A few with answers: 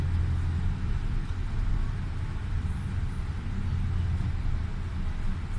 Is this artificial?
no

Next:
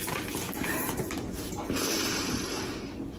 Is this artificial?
no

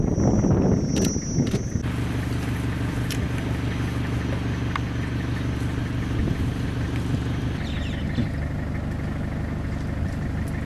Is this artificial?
no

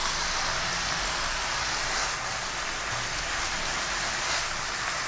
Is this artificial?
no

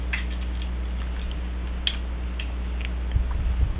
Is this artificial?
no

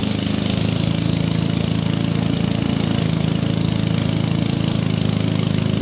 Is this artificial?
no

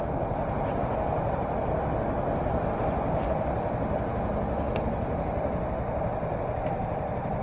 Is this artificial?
no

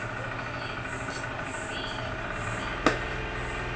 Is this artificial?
no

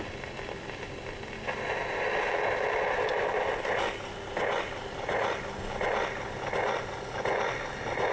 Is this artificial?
no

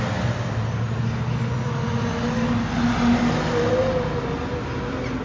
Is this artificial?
no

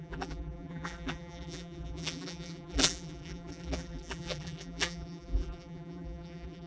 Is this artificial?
yes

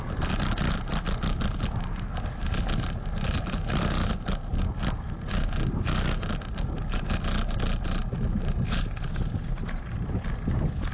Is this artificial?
no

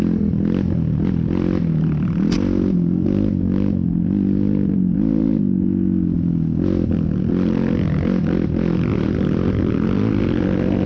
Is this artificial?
no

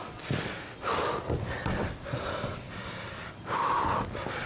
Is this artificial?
no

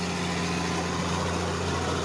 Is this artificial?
no